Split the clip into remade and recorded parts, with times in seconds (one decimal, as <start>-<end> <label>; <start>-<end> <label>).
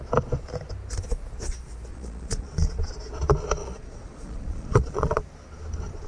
0.0-1.9 recorded; 1.9-2.9 remade; 2.9-3.6 recorded; 3.6-5.2 remade; 5.2-6.1 recorded